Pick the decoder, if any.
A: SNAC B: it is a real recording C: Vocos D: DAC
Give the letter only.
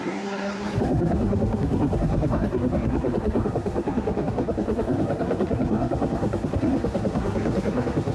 A